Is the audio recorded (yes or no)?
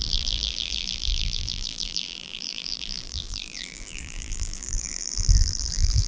no